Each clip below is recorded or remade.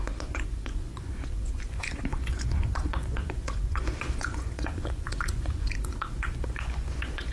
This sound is remade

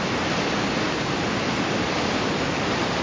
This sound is recorded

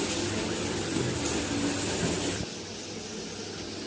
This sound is recorded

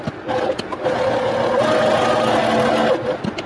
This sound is recorded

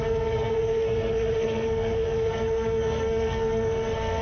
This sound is remade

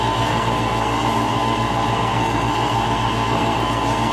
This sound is remade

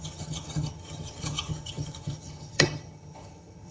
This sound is remade